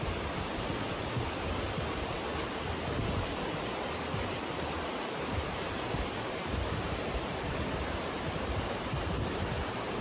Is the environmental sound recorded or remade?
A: remade